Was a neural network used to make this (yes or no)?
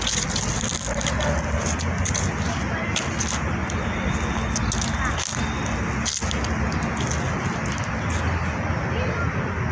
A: no